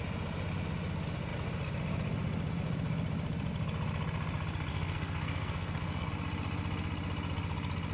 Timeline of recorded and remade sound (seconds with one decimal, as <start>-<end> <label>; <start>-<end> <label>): 0.0-4.7 recorded; 4.7-6.1 remade; 6.1-7.9 recorded